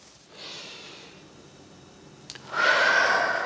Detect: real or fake real